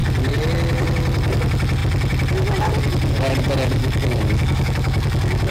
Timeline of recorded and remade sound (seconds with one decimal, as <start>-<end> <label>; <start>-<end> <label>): 0.0-3.8 recorded; 3.8-5.5 remade